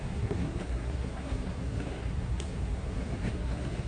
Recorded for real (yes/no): no